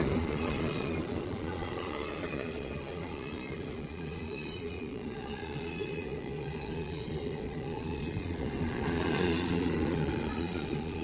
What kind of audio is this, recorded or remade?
remade